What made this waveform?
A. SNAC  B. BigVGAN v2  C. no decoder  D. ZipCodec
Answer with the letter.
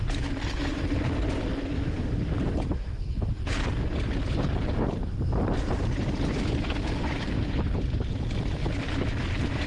C